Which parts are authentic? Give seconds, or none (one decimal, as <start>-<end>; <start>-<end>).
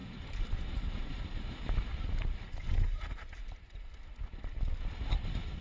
3.4-5.6